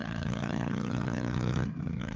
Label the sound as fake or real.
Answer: fake